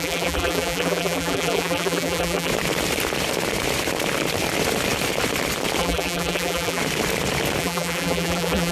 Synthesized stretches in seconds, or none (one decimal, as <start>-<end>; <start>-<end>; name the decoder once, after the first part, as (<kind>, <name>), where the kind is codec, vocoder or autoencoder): 0.0-2.5 (vocoder, BigVGAN v2); 5.8-6.8; 7.6-8.7